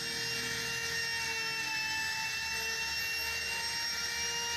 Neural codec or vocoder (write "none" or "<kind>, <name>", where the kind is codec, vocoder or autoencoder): none